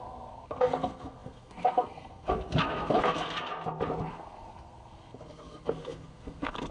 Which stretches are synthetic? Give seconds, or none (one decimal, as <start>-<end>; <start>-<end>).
0.0-3.5; 4.1-6.7